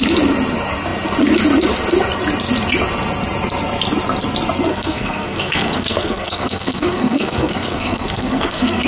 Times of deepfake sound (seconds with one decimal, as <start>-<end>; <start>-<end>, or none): 4.7-8.9